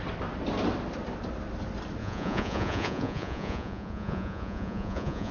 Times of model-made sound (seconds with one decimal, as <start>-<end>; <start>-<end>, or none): 2.0-5.3